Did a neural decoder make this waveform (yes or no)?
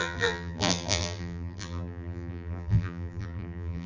yes